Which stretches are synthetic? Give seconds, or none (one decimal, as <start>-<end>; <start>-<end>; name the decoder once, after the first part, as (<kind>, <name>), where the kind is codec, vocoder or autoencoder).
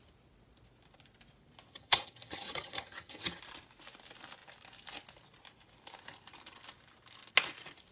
1.7-3.4 (vocoder, HiFi-GAN)